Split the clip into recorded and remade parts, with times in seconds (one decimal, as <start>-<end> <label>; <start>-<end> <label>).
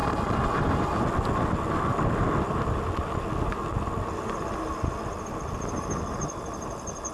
0.0-7.1 recorded